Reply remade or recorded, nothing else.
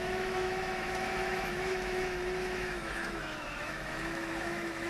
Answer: remade